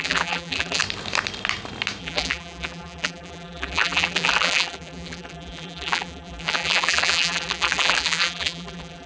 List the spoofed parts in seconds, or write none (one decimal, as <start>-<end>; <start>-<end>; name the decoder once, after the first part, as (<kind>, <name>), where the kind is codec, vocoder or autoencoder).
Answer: 0.0-0.8 (vocoder, BigVGAN v2); 2.0-9.1